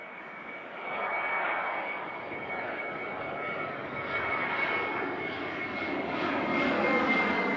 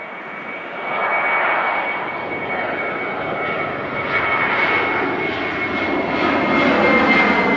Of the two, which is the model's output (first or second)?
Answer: first